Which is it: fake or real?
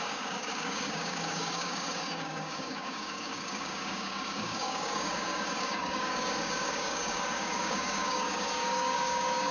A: fake